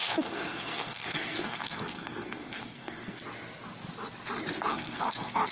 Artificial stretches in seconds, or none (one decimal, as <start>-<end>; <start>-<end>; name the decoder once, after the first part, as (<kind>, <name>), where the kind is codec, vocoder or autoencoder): 0.0-3.2 (codec, SNAC); 4.7-5.5